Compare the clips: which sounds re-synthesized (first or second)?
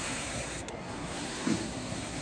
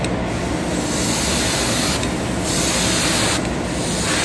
first